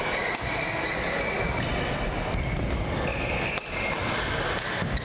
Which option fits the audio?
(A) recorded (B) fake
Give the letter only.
A